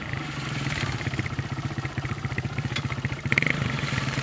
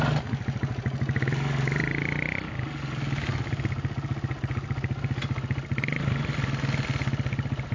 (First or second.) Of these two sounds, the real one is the second